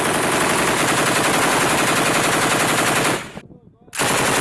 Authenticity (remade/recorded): recorded